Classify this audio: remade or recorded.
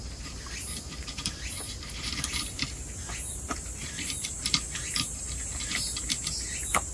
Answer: remade